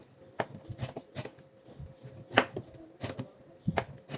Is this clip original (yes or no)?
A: yes